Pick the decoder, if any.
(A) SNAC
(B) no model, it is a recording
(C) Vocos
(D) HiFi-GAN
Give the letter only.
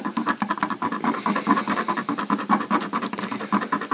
B